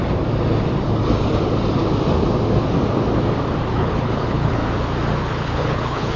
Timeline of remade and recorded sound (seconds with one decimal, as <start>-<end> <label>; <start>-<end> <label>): 0.0-3.7 recorded; 3.7-4.6 remade; 4.6-5.2 recorded; 5.2-6.2 remade